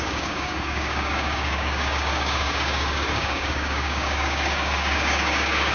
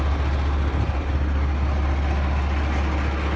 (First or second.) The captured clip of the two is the second